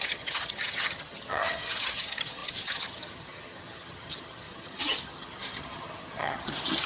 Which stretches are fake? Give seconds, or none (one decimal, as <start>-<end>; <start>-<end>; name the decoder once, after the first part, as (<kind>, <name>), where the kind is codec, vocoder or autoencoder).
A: 0.0-6.9 (vocoder, HiFi-GAN)